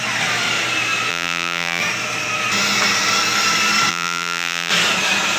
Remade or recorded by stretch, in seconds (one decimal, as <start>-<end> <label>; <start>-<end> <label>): 0.0-1.1 recorded; 1.1-1.8 remade; 1.8-3.9 recorded; 3.9-4.7 remade; 4.7-5.4 recorded